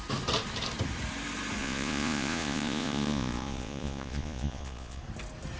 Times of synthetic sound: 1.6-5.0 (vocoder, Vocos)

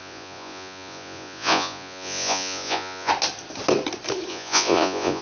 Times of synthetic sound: 0.0-3.1 (vocoder, Vocos); 4.3-5.2

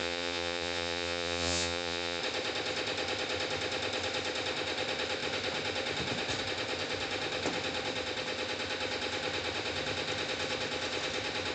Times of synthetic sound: 0.0-2.2 (vocoder, Vocos)

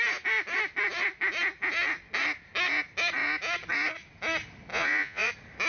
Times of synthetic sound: 4.7-5.3 (vocoder, Vocos)